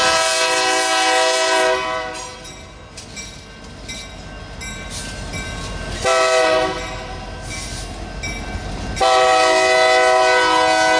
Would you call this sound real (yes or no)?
yes